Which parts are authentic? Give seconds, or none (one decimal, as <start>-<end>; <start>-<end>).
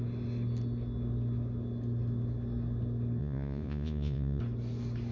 0.0-3.2; 4.4-5.1